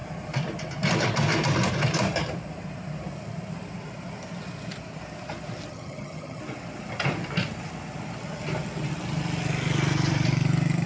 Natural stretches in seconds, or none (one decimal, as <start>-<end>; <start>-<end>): 0.0-5.7; 6.4-10.9